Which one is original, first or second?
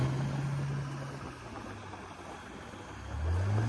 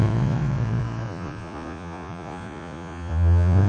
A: first